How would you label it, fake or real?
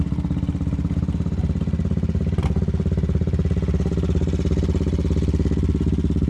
real